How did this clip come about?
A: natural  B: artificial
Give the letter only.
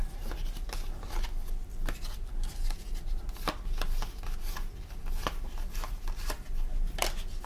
A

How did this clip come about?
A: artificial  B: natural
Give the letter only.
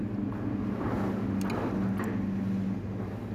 B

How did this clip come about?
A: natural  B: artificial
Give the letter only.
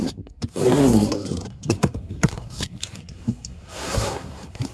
B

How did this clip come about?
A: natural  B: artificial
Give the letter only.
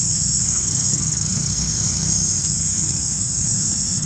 B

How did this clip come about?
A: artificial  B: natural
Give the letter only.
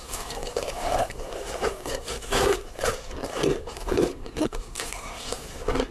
A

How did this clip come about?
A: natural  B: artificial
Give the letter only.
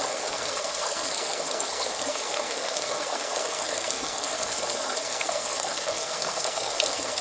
B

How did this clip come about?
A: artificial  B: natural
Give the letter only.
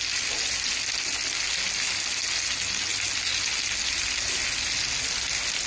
B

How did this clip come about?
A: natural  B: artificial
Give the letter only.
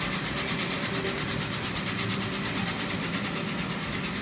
A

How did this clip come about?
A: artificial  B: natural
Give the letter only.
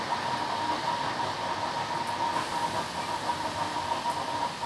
B